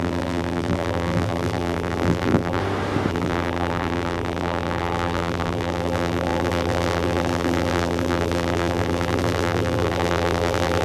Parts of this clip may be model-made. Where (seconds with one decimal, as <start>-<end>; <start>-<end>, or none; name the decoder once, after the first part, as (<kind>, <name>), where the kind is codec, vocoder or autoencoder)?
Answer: 0.0-2.6 (vocoder, BigVGAN v2); 3.1-10.8